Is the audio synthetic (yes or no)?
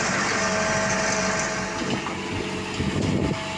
no